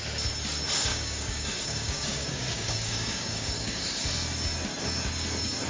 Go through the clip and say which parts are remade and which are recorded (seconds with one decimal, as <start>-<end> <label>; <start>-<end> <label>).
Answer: 0.0-0.9 recorded; 0.9-3.8 remade; 3.8-5.7 recorded